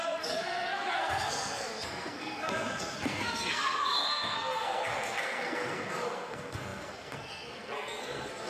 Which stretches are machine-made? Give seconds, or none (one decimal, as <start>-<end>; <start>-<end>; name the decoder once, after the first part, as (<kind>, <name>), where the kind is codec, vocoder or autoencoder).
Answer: 0.0-8.5 (codec, SNAC)

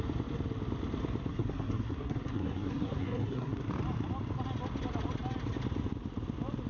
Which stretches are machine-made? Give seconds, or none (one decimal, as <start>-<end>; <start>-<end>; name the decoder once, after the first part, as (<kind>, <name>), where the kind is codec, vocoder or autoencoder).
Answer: 1.3-3.6 (codec, SNAC)